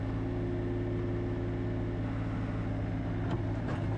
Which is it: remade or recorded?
recorded